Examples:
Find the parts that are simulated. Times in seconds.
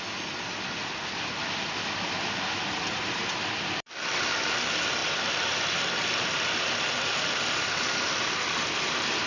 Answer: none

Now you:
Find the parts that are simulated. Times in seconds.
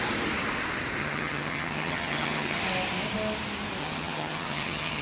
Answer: 1.0-2.6 (vocoder, HiFi-GAN); 3.8-5.0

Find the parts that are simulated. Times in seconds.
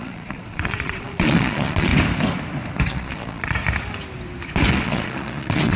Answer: 0.0-1.9 (vocoder, Vocos); 2.9-3.6; 4.7-5.8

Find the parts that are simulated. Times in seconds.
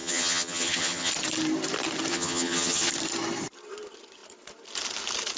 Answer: 0.0-1.1 (vocoder, HiFi-GAN); 2.1-2.9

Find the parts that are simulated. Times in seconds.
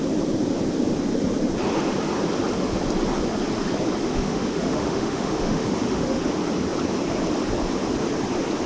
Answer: 4.1-6.2 (autoencoder, DAC-VAE)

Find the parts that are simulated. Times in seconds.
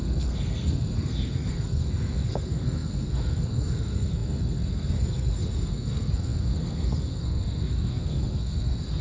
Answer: 0.0-9.0 (codec, SNAC)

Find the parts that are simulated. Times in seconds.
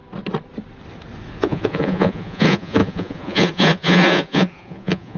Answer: 1.4-5.2 (vocoder, Vocos)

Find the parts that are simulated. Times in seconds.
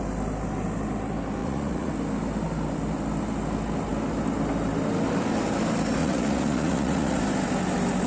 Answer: 1.4-1.9 (vocoder, Vocos); 6.0-7.2